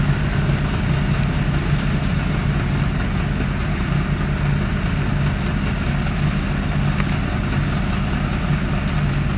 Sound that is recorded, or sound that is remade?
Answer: recorded